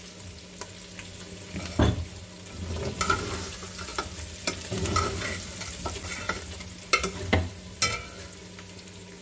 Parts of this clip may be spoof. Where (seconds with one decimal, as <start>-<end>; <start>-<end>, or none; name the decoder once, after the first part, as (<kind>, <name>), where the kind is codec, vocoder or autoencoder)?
none